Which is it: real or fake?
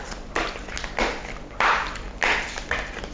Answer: real